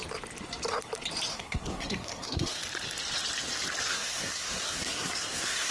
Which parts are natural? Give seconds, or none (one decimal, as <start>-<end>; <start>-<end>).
0.0-1.3; 2.6-3.9

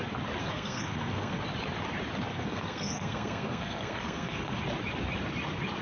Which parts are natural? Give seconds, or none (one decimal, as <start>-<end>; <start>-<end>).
0.0-0.4; 1.4-2.3; 4.6-5.8